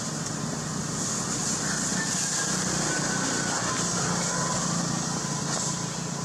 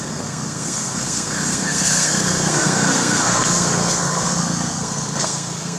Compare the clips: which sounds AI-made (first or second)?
second